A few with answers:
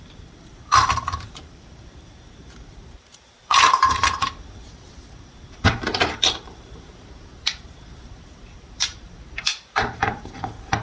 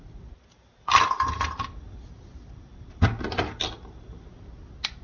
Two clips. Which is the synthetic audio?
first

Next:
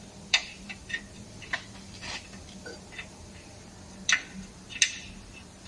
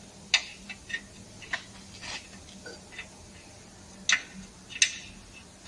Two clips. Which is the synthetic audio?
first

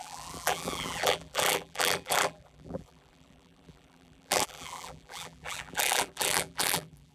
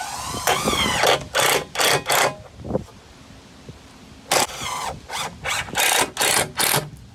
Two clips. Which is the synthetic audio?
first